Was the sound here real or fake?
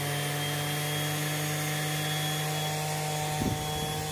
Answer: real